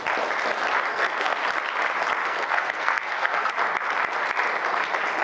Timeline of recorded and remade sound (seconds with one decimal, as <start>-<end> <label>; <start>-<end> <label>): 0.0-0.9 recorded; 0.9-1.4 remade; 1.4-2.2 recorded; 2.2-3.5 remade; 3.5-5.2 recorded